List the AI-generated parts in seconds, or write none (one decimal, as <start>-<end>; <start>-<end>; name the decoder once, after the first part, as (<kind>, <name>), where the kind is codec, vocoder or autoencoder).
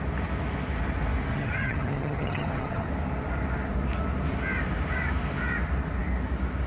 1.3-2.9 (vocoder, HiFi-GAN)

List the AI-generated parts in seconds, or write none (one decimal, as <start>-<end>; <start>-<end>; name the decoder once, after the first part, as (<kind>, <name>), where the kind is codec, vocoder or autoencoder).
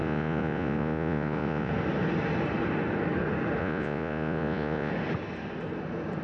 0.0-1.7 (vocoder, Vocos); 3.6-4.9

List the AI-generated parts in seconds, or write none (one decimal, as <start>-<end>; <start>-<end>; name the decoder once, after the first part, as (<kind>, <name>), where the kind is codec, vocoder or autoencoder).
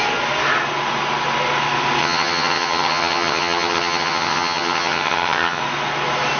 2.0-5.6 (vocoder, HiFi-GAN)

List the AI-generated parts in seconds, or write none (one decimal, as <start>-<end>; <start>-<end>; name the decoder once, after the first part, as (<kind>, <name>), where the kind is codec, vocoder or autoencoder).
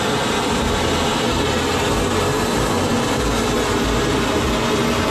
none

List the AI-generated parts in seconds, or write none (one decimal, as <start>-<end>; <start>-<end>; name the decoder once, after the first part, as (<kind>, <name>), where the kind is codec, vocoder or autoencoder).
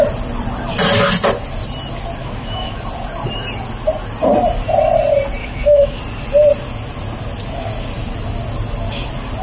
2.2-2.8 (autoencoder, DAC-VAE); 5.4-6.0